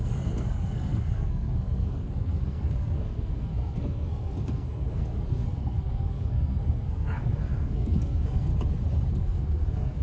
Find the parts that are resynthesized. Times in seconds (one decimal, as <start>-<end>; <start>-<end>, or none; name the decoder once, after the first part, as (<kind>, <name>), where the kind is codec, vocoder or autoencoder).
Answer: 0.0-8.5 (codec, SNAC); 9.1-10.0